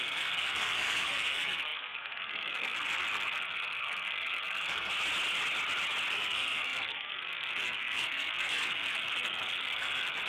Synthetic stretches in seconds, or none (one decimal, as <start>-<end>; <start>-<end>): 0.0-4.9; 6.1-10.3